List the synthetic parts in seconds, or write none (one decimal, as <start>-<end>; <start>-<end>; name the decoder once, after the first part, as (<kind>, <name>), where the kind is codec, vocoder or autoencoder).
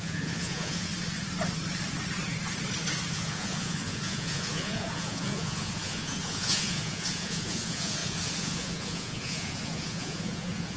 0.0-0.9 (vocoder, Vocos); 3.1-10.8